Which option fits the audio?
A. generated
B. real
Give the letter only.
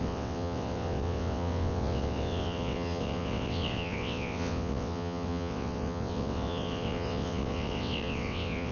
A